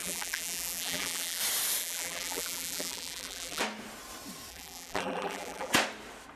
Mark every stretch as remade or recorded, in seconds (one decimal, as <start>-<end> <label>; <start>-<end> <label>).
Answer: 0.0-1.4 remade; 1.4-1.8 recorded; 1.8-3.6 remade; 3.6-4.5 recorded; 4.5-5.7 remade; 5.7-6.4 recorded